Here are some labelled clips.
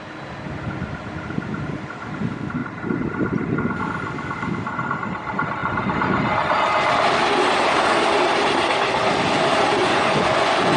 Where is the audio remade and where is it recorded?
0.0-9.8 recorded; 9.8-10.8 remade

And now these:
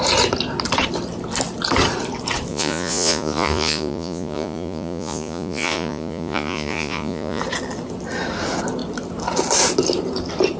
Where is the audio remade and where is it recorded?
0.0-2.5 recorded; 2.5-7.4 remade; 7.4-10.6 recorded

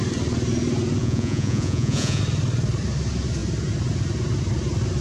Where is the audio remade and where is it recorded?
0.0-1.0 recorded; 1.0-2.2 remade; 2.2-5.0 recorded

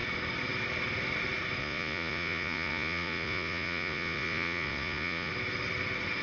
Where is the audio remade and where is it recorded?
0.0-1.6 recorded; 1.6-5.3 remade; 5.3-6.2 recorded

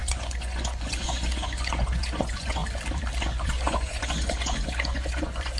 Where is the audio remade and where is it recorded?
0.0-2.6 remade; 2.6-3.2 recorded; 3.2-5.6 remade

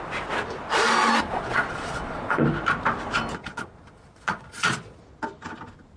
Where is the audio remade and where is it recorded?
0.0-1.2 recorded; 1.2-2.4 remade; 2.4-3.4 recorded; 3.4-5.0 remade; 5.0-6.0 recorded